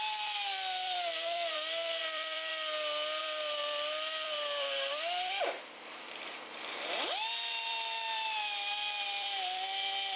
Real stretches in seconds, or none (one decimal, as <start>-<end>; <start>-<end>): 2.5-3.2